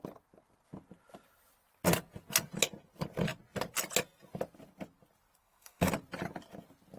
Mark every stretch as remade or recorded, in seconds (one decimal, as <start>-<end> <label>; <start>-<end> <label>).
0.0-5.4 recorded; 5.4-5.9 remade; 5.9-7.0 recorded